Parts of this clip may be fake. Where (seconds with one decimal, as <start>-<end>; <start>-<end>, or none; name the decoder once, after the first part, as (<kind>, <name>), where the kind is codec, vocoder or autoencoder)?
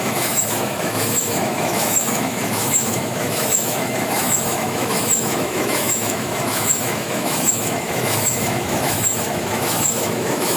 0.0-10.6 (autoencoder, DAC-VAE)